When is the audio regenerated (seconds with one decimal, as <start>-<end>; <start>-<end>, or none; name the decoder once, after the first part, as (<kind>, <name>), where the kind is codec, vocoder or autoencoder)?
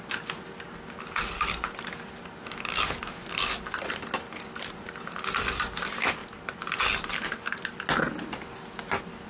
none